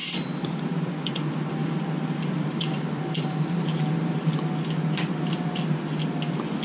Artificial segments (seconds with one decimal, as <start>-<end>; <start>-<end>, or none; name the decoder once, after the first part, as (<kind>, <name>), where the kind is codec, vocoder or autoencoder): 0.0-1.1 (vocoder, BigVGAN v2); 1.6-3.6